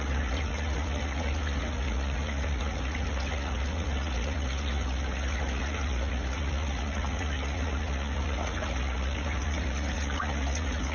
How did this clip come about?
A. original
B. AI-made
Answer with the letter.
B